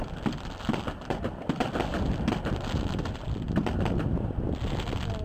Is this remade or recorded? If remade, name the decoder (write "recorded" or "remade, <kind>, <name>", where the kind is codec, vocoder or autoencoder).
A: recorded